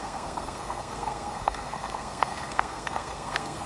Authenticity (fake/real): fake